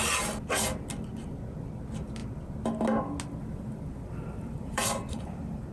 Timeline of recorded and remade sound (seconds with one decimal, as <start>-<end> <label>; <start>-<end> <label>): 0.0-4.4 recorded; 4.4-5.7 remade